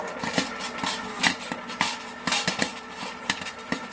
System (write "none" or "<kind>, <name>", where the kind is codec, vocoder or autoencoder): none